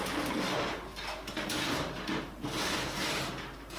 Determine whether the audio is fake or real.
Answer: fake